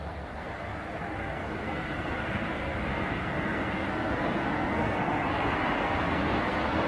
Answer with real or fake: fake